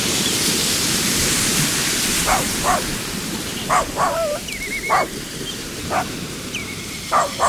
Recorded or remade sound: remade